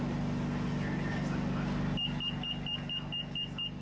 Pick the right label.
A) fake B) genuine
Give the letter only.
B